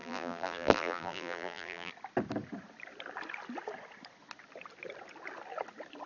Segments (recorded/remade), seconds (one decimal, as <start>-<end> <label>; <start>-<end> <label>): 0.0-1.9 remade; 1.9-6.1 recorded